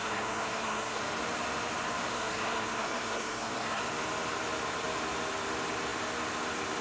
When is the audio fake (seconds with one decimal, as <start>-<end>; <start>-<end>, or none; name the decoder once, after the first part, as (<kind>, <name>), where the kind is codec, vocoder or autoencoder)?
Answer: 0.0-1.0 (codec, SNAC); 2.1-3.8